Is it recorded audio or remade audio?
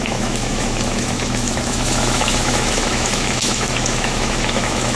remade